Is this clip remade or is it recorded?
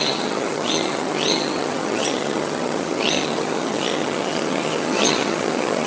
remade